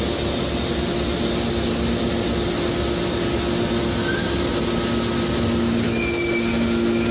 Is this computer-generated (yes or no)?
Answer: no